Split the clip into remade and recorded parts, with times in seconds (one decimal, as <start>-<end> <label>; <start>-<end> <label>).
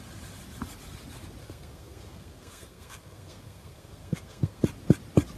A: 0.0-1.4 recorded; 1.4-4.6 remade; 4.6-5.4 recorded